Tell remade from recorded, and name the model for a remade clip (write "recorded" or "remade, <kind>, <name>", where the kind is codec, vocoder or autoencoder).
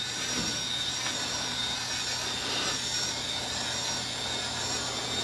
recorded